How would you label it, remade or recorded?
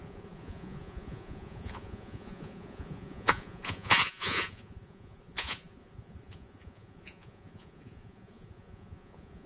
remade